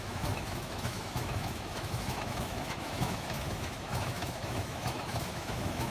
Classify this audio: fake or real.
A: fake